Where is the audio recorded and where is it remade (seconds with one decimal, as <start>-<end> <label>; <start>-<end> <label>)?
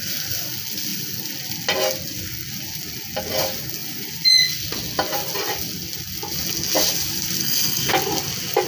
0.0-7.4 recorded; 7.4-7.9 remade; 7.9-8.7 recorded